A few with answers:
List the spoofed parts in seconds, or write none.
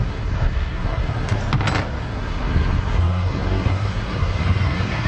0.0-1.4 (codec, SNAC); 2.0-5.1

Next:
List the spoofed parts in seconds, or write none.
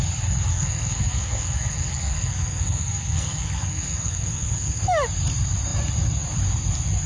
0.5-4.8 (codec, SNAC)